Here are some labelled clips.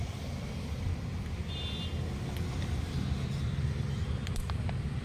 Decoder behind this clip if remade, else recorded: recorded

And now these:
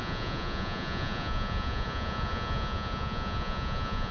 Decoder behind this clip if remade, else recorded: remade, vocoder, Vocos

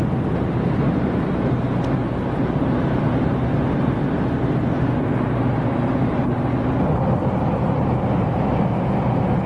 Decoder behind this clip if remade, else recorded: recorded